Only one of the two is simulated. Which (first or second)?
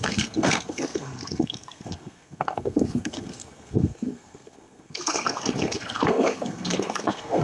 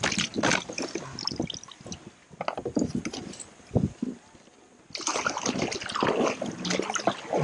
first